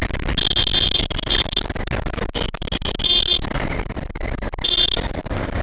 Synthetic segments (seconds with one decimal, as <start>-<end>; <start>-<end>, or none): none